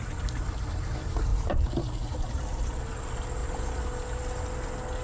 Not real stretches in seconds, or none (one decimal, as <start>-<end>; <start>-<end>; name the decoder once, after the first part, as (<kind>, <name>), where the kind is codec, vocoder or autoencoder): 1.3-2.8 (vocoder, BigVGAN v2)